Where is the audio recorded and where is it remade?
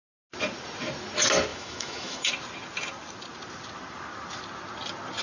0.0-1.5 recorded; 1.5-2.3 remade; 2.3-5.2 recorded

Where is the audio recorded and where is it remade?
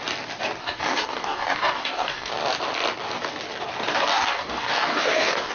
0.0-0.6 recorded; 0.6-2.3 remade; 2.3-4.1 recorded; 4.1-5.5 remade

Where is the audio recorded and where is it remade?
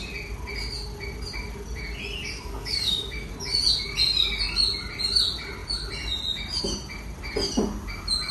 0.0-2.2 recorded; 2.2-3.3 remade; 3.3-8.3 recorded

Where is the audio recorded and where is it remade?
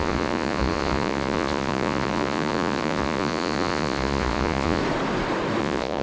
0.0-4.8 remade; 4.8-5.6 recorded; 5.6-6.0 remade